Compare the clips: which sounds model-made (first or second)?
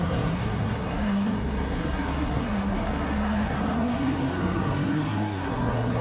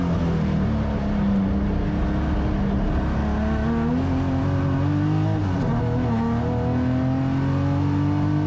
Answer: first